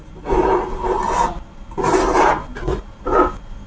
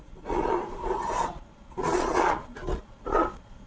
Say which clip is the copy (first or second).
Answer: second